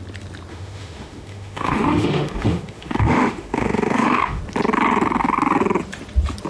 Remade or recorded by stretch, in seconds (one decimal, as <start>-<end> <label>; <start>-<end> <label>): 0.0-0.5 recorded; 0.5-4.4 remade; 4.4-6.5 recorded